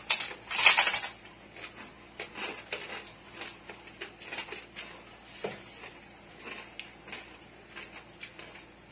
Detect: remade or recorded recorded